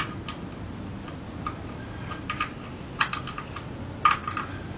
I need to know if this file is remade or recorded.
recorded